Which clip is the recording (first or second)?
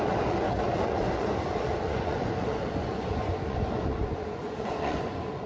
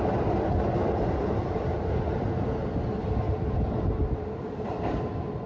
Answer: second